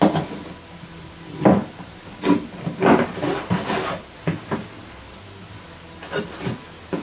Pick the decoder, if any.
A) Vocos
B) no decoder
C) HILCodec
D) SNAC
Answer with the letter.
B